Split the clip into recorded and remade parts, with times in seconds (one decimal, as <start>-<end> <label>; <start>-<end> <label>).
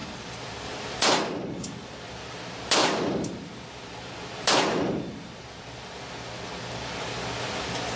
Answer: 0.0-1.5 remade; 1.5-2.8 recorded; 2.8-3.5 remade; 3.5-8.0 recorded